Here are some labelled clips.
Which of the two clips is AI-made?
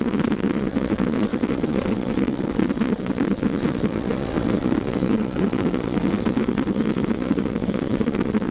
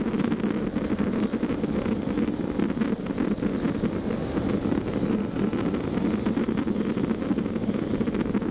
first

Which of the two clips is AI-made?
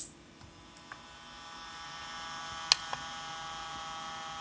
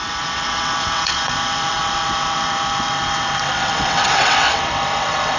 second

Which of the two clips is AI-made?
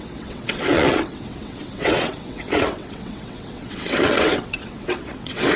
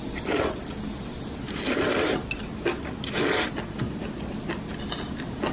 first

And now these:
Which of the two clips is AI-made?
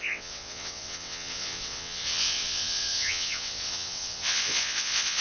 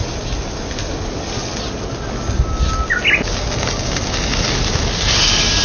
first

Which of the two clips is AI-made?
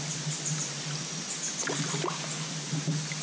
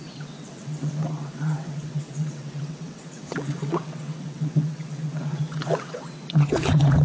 second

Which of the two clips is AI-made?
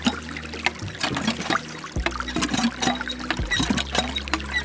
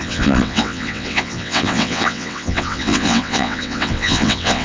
second